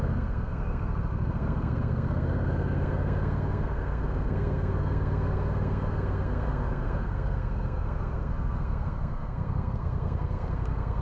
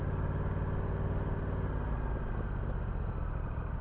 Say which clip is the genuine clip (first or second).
second